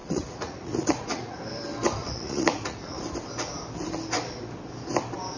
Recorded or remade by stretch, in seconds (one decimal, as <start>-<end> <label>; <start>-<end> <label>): 0.0-1.4 remade; 1.4-2.0 recorded; 2.0-3.0 remade; 3.0-5.4 recorded